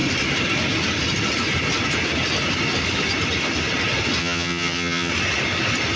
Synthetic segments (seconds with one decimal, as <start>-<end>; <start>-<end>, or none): 4.2-5.1